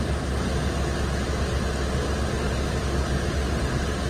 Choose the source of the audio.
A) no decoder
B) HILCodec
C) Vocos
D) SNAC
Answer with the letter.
A